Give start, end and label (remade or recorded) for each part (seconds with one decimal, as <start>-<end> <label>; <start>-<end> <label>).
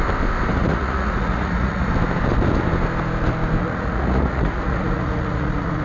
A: 0.0-0.5 recorded; 0.5-1.9 remade; 1.9-3.6 recorded; 3.6-5.8 remade